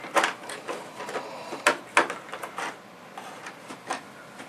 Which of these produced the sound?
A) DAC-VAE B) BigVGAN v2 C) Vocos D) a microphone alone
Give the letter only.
D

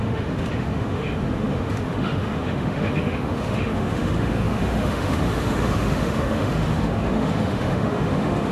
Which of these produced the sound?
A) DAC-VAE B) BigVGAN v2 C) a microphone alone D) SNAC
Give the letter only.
A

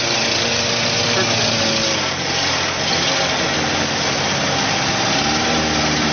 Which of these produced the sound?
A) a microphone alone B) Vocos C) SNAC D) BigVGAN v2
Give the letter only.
A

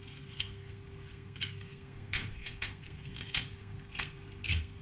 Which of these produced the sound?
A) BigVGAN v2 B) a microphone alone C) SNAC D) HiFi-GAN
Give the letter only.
C